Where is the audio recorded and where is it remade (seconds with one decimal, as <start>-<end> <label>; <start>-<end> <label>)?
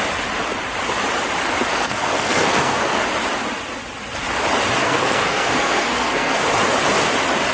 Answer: 0.0-1.7 recorded; 1.7-3.0 remade; 3.0-4.8 recorded; 4.8-6.4 remade; 6.4-7.5 recorded